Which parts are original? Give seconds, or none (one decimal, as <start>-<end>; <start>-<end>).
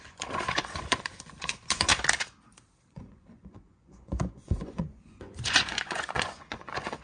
1.9-2.9